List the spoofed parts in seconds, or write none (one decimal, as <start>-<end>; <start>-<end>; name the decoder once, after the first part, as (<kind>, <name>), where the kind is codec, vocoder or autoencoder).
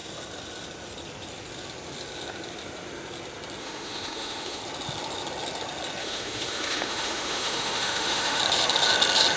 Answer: 3.6-4.6 (autoencoder, DAC-VAE); 6.0-8.4